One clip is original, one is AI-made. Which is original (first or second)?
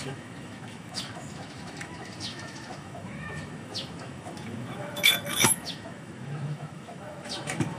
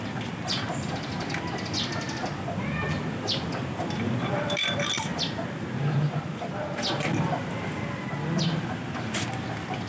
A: second